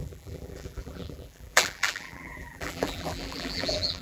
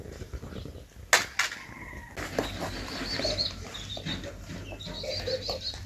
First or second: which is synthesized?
first